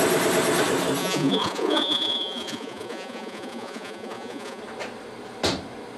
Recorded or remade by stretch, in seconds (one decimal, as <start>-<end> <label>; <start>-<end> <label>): 0.0-1.0 recorded; 1.0-4.6 remade; 4.6-6.0 recorded

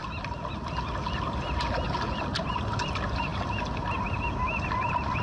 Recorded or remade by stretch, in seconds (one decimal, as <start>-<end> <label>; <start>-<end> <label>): 0.0-5.2 recorded